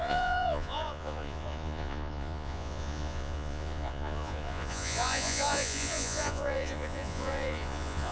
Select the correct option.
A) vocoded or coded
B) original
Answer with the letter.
A